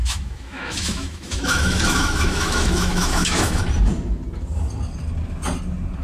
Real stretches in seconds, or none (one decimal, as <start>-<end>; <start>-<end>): 3.6-6.0